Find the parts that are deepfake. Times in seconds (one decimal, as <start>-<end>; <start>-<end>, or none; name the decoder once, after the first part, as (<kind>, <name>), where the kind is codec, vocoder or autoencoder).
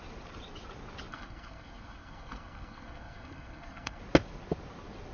1.1-4.0 (codec, SNAC)